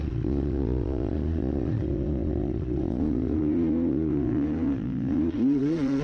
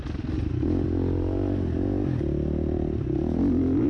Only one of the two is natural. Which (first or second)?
second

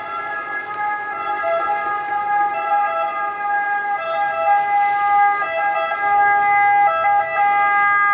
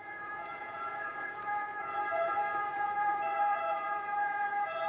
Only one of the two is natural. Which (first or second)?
first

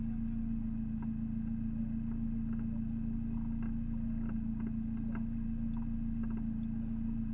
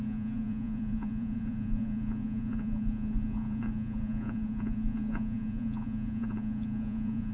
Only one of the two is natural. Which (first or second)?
first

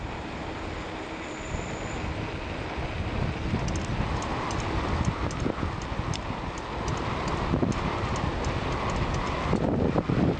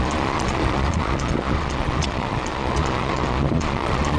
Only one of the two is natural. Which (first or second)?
first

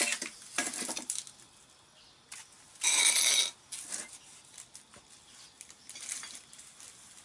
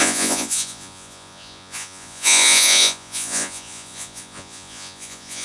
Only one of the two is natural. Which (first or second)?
first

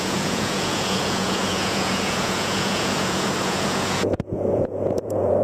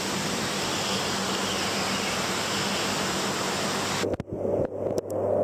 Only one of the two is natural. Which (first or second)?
second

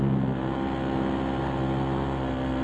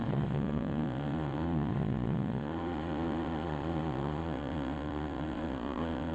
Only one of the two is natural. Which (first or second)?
first